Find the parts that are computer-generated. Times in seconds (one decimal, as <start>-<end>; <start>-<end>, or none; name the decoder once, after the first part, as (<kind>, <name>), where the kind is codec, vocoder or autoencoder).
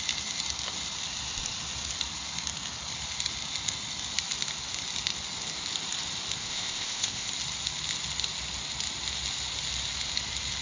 6.4-7.3 (codec, ZipCodec)